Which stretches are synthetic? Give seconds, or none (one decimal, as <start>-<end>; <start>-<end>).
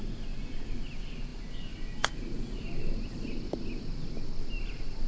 none